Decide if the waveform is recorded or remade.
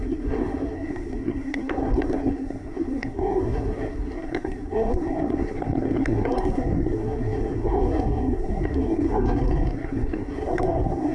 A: remade